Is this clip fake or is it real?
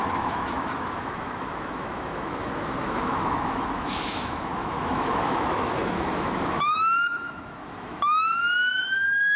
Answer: fake